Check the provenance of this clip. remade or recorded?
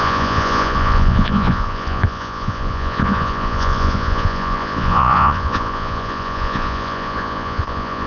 remade